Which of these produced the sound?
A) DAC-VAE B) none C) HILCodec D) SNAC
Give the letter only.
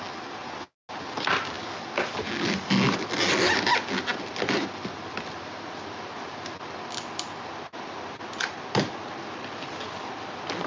B